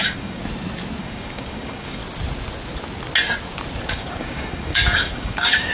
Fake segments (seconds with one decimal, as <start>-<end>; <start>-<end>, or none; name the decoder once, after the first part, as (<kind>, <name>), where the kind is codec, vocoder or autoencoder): 0.0-0.4 (codec, DAC); 1.0-2.0; 3.9-5.7